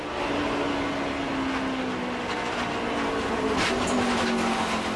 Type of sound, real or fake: real